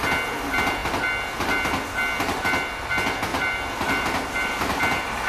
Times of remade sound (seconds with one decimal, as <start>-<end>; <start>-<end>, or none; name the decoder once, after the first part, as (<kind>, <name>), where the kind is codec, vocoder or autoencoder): 3.3-4.8 (vocoder, BigVGAN v2)